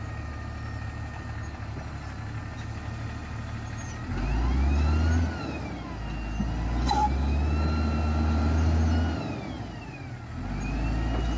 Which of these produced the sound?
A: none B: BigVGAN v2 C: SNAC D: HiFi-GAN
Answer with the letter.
A